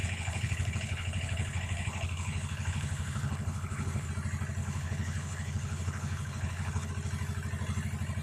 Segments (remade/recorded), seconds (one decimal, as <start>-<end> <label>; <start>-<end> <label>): 0.0-4.1 remade; 4.1-4.6 recorded; 4.6-6.9 remade; 6.9-8.2 recorded